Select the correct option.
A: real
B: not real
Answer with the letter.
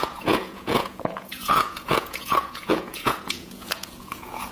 B